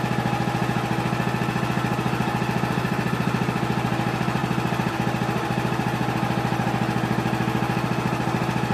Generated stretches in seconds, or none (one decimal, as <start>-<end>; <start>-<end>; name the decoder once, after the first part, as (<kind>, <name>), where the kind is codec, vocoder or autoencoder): none